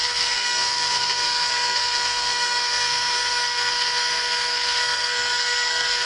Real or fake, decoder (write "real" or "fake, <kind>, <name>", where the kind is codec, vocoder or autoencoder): fake, codec, SNAC